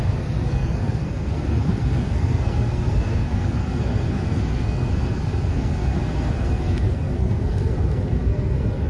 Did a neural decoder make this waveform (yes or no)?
yes